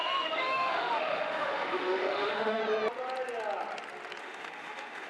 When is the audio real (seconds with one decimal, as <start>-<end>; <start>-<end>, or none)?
2.6-4.2